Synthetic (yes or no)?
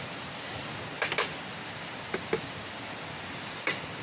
no